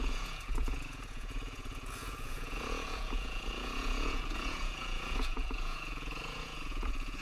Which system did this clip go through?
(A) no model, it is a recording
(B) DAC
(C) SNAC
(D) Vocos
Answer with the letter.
D